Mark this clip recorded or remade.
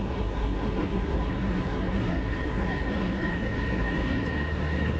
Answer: remade